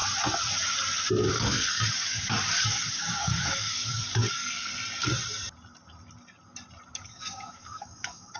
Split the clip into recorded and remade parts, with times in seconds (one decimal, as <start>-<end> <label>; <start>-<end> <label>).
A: 0.0-1.3 recorded; 1.3-4.7 remade; 4.7-6.9 recorded; 6.9-8.4 remade